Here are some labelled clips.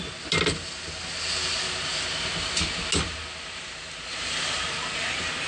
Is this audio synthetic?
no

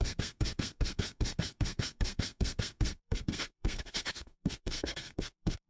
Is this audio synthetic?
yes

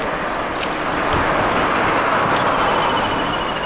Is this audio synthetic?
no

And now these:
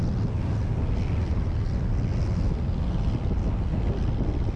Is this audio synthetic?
no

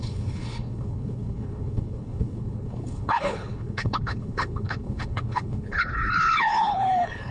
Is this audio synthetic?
yes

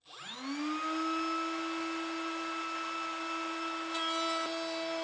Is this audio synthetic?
no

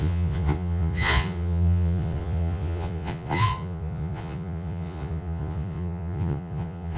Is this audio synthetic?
yes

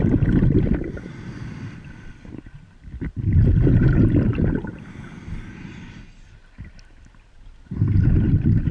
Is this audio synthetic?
no